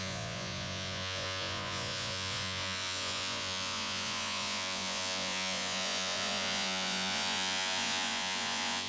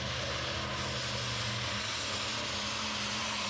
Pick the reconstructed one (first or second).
first